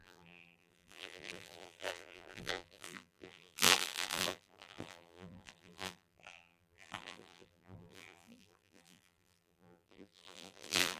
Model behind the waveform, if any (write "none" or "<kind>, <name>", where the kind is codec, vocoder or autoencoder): vocoder, BigVGAN v2